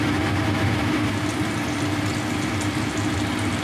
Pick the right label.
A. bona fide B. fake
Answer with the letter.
A